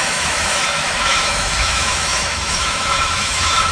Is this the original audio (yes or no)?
no